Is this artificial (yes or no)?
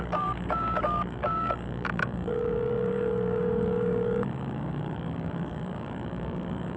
yes